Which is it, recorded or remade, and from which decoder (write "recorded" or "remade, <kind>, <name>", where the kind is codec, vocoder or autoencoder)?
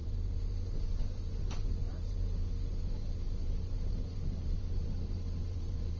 remade, vocoder, BigVGAN v2